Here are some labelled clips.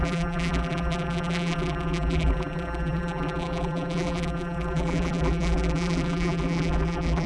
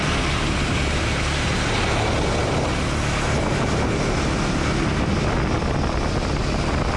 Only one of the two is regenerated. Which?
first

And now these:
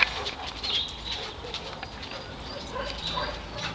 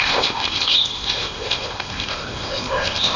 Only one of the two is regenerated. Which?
second